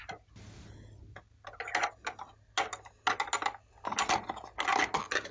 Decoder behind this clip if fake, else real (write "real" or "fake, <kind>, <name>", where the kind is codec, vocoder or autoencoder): real